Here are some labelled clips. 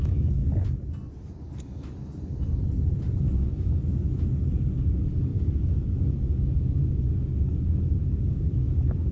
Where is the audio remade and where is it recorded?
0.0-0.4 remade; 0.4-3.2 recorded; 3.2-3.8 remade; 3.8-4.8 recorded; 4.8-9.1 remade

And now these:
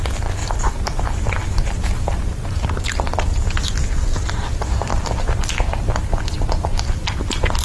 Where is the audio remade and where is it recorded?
0.0-0.4 recorded; 0.4-2.7 remade; 2.7-7.6 recorded

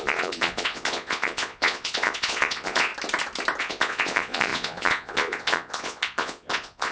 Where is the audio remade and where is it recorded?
0.0-2.9 remade; 2.9-3.6 recorded; 3.6-6.9 remade